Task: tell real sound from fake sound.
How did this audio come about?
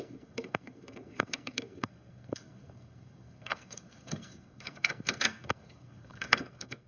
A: fake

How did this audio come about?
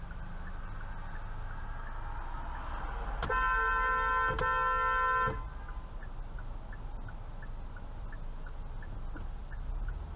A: real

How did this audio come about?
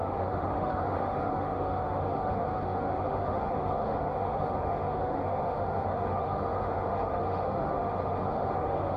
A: fake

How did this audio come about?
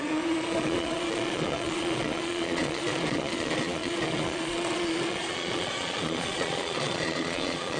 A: fake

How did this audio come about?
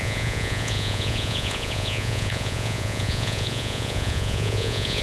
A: fake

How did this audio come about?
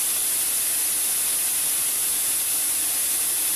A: real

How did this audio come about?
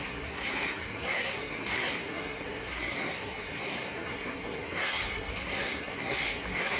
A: fake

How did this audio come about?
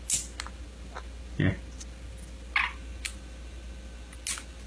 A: real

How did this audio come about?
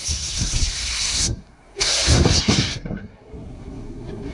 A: fake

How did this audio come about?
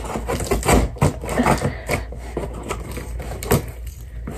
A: real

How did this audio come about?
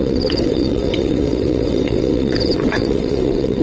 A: fake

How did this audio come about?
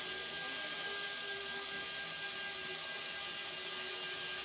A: real